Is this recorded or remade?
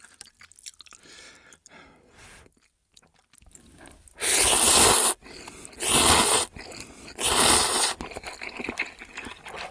recorded